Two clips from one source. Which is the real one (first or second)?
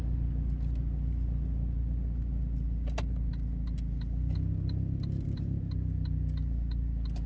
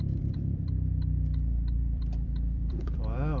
first